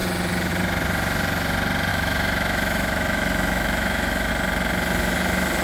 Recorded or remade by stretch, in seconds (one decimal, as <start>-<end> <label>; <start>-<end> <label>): 0.0-1.9 recorded; 1.9-4.3 remade; 4.3-5.6 recorded